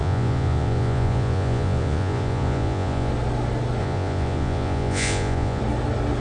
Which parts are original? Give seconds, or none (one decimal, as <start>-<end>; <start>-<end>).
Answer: 3.1-3.8; 5.6-6.2